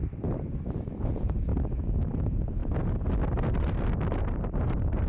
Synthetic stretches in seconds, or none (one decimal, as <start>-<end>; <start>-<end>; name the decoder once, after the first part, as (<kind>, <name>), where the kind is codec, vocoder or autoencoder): 0.0-1.5 (vocoder, BigVGAN v2); 2.2-2.6; 3.3-5.1